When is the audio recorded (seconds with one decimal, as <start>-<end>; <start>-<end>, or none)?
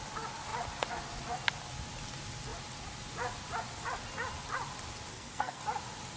0.0-5.1; 5.6-6.2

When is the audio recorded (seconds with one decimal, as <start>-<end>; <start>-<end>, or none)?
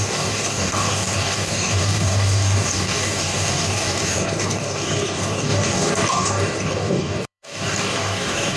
none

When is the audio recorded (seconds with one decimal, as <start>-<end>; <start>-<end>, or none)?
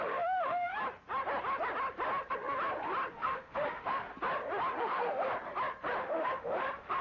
0.7-3.1; 4.1-4.8; 5.3-6.0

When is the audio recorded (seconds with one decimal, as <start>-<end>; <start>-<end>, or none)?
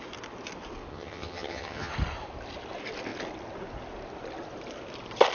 0.0-0.9; 1.9-5.3